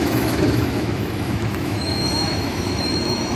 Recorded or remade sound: remade